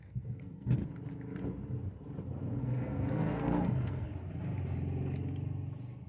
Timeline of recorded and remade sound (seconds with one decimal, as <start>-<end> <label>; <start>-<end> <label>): 0.0-0.8 remade; 0.8-2.6 recorded; 2.6-4.1 remade; 4.1-6.1 recorded